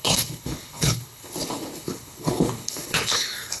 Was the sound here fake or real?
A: fake